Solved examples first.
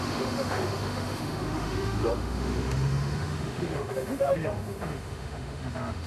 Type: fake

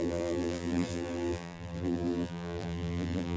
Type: fake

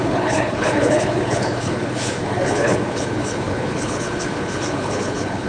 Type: fake